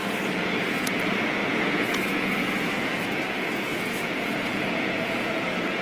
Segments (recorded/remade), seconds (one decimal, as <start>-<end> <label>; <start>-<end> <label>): 0.0-0.7 recorded; 0.7-5.8 remade